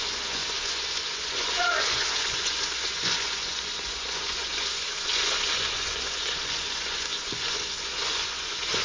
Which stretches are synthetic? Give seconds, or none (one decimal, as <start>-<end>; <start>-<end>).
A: 0.0-8.8